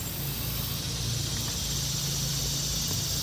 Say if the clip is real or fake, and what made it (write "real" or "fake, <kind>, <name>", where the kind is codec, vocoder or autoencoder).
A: real